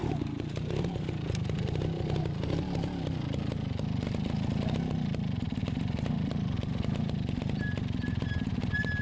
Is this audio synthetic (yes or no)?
no